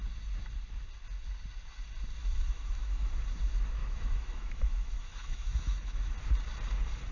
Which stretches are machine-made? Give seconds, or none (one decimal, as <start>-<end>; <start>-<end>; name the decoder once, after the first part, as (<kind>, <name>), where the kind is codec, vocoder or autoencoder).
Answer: 2.2-3.1 (autoencoder, DAC-VAE); 3.8-6.1